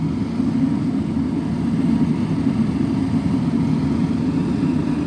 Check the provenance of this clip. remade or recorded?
recorded